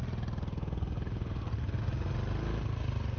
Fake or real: real